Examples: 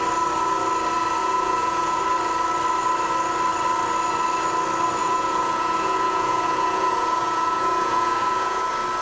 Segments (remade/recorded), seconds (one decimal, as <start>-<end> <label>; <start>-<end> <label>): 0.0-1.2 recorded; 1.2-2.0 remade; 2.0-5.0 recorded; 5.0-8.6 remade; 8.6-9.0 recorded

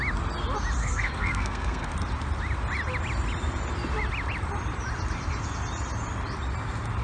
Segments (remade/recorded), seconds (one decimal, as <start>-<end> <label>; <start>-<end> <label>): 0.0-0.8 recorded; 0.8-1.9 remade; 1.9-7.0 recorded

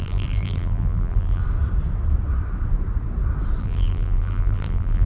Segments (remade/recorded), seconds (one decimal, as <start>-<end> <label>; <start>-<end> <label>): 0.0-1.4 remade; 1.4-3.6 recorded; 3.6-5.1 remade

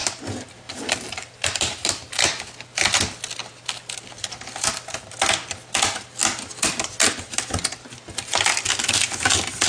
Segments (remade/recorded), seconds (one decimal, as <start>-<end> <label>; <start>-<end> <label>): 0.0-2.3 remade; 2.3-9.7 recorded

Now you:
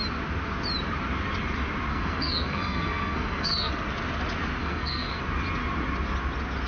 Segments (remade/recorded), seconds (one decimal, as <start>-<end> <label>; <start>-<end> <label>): 0.0-1.9 recorded; 1.9-3.7 remade; 3.7-4.6 recorded; 4.6-5.2 remade; 5.2-6.7 recorded

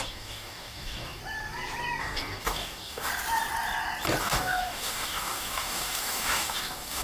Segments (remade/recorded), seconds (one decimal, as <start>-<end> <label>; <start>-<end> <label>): 0.0-1.2 remade; 1.2-2.0 recorded; 2.0-3.1 remade; 3.1-4.2 recorded; 4.2-7.0 remade

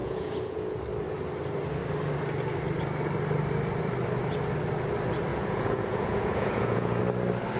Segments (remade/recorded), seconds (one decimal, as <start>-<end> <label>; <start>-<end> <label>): 0.0-0.8 remade; 0.8-5.3 recorded; 5.3-7.0 remade; 7.0-7.6 recorded